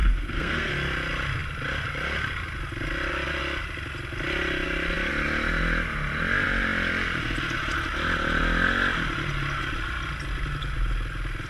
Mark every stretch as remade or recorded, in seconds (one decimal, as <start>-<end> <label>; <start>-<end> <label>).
0.0-0.7 remade; 0.7-11.5 recorded